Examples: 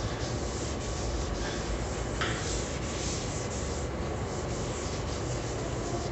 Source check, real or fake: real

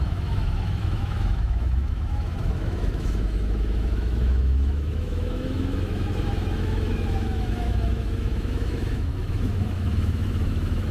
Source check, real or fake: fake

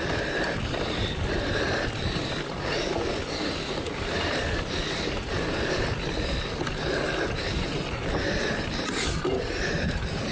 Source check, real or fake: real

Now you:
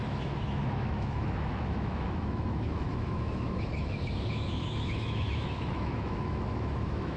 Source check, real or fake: fake